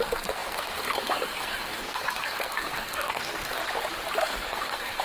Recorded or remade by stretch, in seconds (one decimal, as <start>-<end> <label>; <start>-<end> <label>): 0.0-3.6 remade; 3.6-4.2 recorded; 4.2-5.0 remade